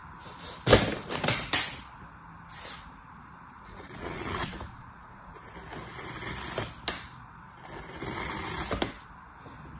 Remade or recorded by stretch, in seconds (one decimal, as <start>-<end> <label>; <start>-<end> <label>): 0.0-3.5 recorded; 3.5-5.4 remade; 5.4-9.8 recorded

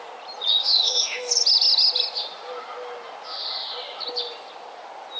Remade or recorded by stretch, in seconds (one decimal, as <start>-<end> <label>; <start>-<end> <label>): 0.0-0.6 recorded; 0.6-1.3 remade; 1.3-5.2 recorded

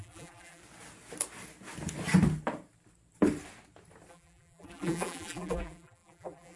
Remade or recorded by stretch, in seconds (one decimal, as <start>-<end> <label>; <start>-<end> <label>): 0.0-0.6 remade; 0.6-4.1 recorded; 4.1-6.6 remade

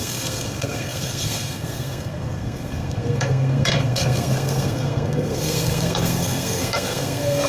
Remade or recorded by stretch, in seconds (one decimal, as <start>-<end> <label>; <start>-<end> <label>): 0.0-7.5 remade

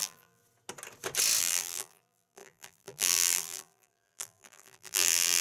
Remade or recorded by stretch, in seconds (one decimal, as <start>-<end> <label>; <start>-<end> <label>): 0.0-0.4 remade; 0.4-1.4 recorded; 1.4-5.4 remade